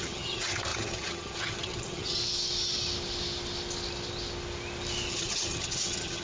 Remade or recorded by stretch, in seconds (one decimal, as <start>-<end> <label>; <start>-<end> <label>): 0.0-2.2 remade; 2.2-5.1 recorded; 5.1-6.2 remade